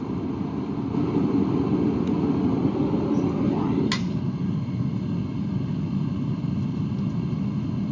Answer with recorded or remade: recorded